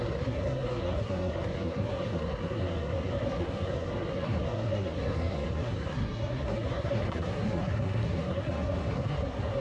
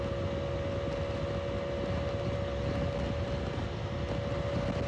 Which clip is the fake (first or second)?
first